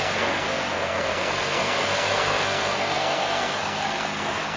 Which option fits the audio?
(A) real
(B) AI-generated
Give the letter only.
B